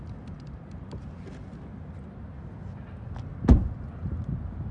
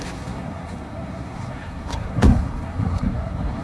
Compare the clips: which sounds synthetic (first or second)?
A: second